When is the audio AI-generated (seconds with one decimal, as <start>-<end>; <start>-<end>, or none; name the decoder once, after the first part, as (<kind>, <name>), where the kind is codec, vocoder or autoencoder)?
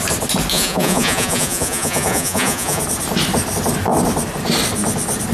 0.5-2.8 (vocoder, Vocos)